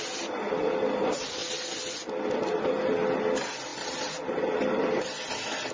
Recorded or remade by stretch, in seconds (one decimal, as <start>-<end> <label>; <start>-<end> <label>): 0.0-5.7 recorded